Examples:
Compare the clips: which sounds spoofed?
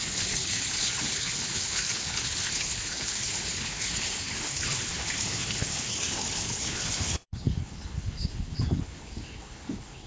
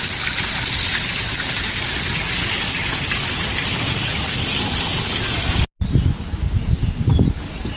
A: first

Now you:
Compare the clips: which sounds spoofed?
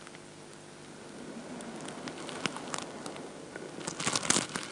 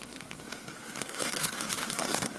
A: second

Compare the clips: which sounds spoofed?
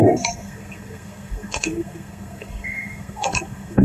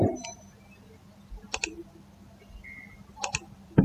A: first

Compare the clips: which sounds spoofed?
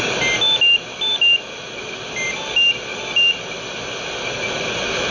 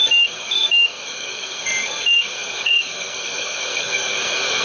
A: second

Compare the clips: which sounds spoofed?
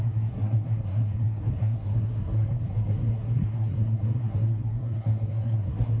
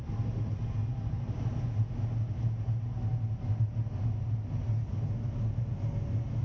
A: first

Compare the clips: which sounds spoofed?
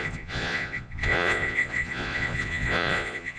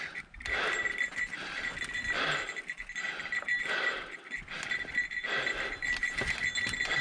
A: first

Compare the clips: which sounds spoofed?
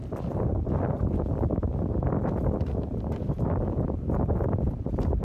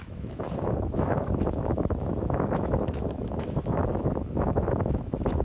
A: second